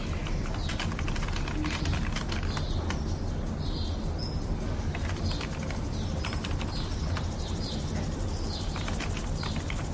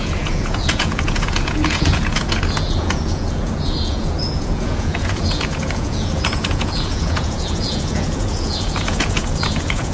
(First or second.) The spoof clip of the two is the second